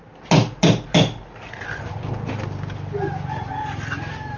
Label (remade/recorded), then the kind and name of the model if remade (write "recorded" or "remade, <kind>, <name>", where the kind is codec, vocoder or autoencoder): recorded